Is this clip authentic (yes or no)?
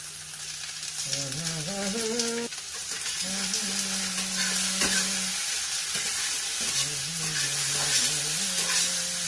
yes